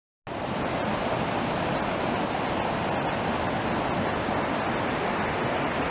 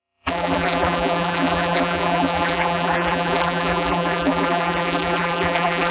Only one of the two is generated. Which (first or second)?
second